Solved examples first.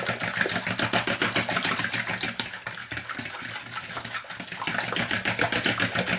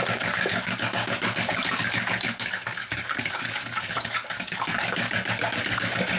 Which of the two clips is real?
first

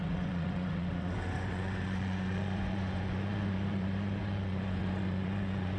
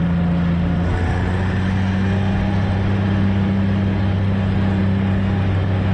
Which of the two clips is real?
second